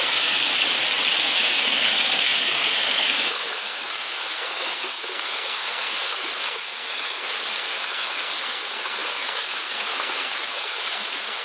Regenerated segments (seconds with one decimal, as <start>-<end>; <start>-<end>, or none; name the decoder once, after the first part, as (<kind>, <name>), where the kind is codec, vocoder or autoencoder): 0.0-0.5 (codec, SNAC); 1.2-11.4